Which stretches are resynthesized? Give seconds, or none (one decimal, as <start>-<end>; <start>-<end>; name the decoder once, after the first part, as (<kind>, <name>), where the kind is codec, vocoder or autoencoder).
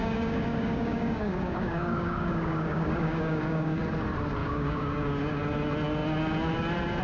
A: 0.0-3.8 (codec, DAC); 4.4-5.4